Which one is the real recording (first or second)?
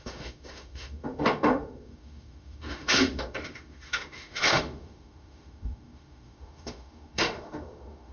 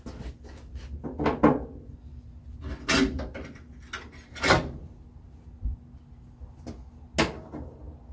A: second